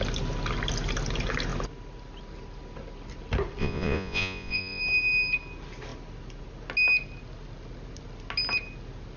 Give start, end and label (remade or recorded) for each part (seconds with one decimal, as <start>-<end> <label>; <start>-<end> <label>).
0.0-3.6 recorded; 3.6-4.8 remade; 4.8-9.2 recorded